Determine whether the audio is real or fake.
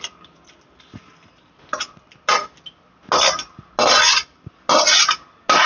real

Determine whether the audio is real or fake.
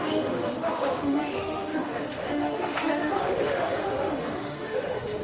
fake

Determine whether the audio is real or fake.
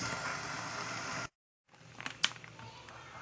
real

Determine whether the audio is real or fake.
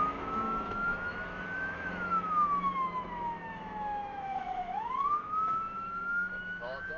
fake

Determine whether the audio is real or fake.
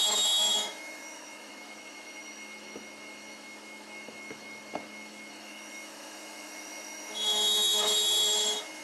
fake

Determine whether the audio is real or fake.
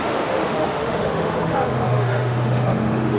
fake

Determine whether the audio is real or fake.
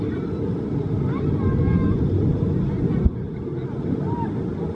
real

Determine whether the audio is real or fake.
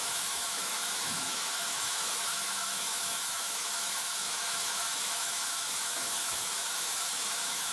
fake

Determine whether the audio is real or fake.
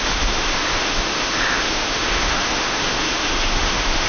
fake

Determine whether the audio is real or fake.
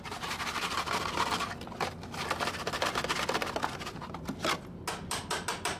real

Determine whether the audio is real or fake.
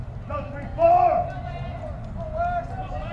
real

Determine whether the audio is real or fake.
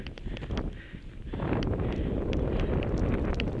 real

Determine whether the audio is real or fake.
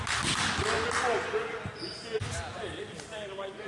real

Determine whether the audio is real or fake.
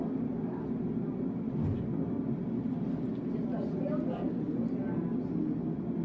real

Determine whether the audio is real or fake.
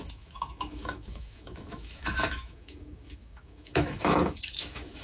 fake